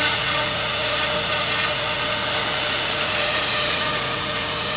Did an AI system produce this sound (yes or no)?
yes